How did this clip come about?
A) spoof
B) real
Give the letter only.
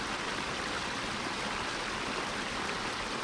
B